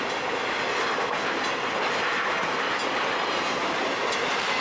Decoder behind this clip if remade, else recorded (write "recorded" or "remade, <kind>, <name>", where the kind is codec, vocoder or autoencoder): recorded